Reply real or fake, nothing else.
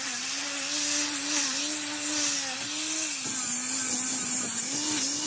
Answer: real